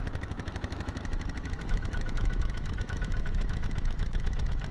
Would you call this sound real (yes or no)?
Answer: no